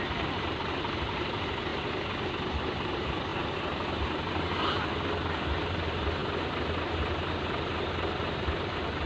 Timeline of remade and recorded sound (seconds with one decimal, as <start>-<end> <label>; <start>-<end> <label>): 0.0-1.7 remade; 1.7-2.6 recorded; 2.6-6.2 remade; 6.2-7.3 recorded; 7.3-9.1 remade